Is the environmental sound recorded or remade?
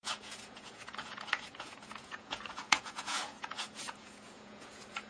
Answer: remade